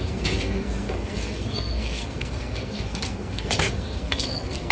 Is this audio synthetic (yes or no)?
yes